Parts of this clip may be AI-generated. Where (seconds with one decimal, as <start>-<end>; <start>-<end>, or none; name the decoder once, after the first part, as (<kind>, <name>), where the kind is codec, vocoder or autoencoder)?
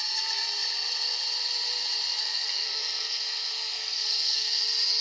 2.2-4.6 (codec, SNAC)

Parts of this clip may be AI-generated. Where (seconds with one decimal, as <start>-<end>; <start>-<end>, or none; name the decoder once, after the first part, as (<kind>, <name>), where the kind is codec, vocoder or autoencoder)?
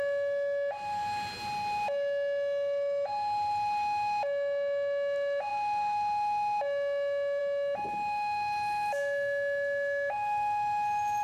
none